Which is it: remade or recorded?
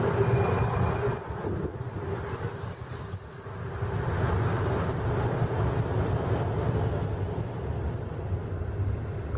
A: recorded